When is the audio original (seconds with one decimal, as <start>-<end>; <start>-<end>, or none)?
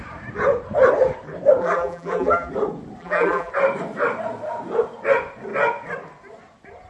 0.0-1.6; 2.5-3.0; 3.5-6.9